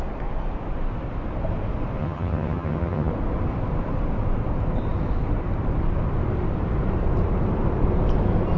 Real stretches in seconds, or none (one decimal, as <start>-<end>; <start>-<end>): 0.0-2.0; 3.1-8.6